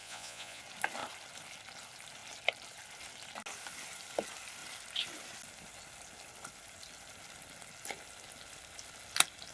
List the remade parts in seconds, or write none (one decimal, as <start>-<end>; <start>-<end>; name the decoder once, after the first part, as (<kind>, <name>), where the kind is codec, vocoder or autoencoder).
0.0-0.6 (vocoder, Vocos)